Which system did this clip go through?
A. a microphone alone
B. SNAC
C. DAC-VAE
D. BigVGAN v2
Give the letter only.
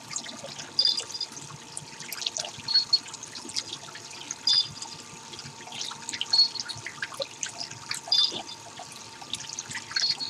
A